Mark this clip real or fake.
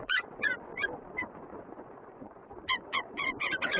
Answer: fake